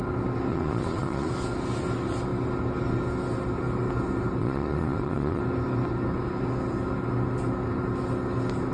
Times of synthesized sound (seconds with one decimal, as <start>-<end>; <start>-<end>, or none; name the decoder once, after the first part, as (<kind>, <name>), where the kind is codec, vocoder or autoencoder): 0.5-1.3 (vocoder, Vocos); 4.4-5.4